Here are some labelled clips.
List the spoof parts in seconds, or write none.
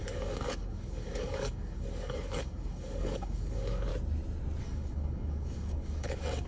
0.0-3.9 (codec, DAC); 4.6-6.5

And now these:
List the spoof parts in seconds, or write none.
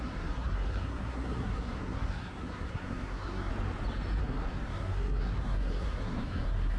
0.0-3.5 (codec, SNAC); 4.2-6.8